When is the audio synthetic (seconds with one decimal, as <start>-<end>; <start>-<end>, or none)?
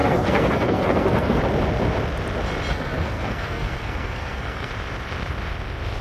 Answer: 0.0-1.4; 2.7-4.7